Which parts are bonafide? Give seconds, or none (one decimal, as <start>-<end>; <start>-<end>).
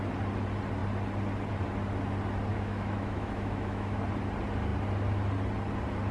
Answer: 0.0-2.5; 4.0-6.1